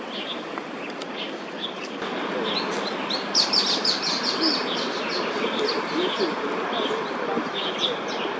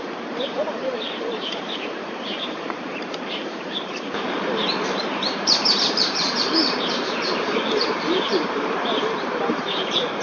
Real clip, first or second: first